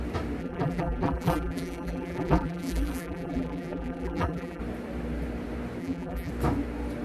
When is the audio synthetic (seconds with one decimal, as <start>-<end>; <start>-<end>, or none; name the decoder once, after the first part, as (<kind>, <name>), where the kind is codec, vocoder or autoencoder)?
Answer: 0.4-4.6 (vocoder, BigVGAN v2); 5.8-6.3